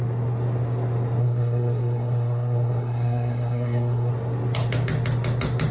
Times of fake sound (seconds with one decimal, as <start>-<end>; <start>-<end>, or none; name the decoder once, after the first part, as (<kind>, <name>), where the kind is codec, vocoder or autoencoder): 1.2-4.1 (codec, SNAC)